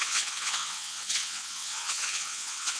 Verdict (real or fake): fake